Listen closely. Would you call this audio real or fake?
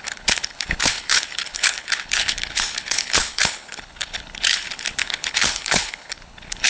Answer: fake